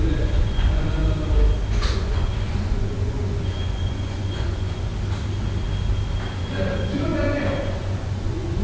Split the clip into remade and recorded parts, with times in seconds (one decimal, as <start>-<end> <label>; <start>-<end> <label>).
0.0-1.0 remade; 1.0-1.7 recorded; 1.7-4.9 remade; 4.9-6.4 recorded; 6.4-8.6 remade